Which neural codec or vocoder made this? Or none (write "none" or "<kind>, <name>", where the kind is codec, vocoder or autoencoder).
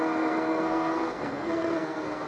codec, SNAC